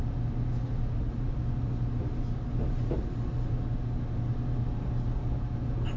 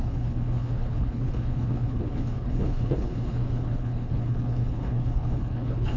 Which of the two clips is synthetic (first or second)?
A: second